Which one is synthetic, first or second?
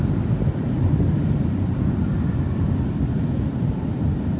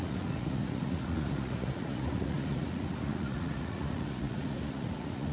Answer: second